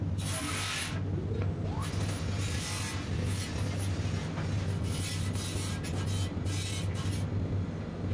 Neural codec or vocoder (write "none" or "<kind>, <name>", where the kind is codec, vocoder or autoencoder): none